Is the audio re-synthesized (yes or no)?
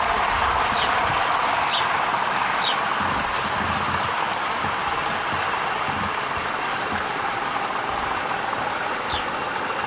no